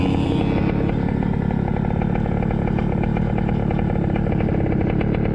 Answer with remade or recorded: recorded